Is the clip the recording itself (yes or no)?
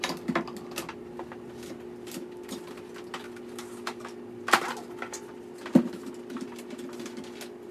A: yes